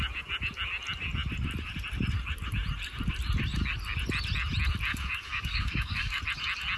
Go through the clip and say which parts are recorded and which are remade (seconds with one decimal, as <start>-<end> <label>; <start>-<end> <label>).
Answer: 0.0-4.9 recorded; 4.9-6.2 remade; 6.2-6.8 recorded